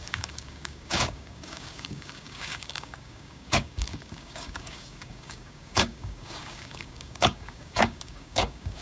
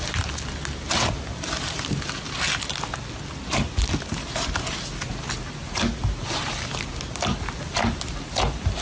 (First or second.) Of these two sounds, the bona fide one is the second